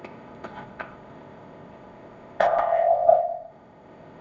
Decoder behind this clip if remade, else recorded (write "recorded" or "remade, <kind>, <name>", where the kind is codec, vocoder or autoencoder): remade, codec, ZipCodec